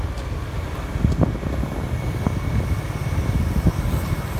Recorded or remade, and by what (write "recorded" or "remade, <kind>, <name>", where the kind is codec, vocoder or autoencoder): recorded